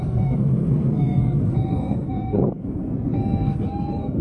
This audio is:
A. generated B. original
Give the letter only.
A